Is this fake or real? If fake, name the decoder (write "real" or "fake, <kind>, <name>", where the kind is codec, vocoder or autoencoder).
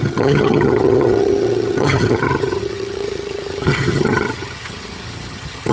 fake, vocoder, HiFi-GAN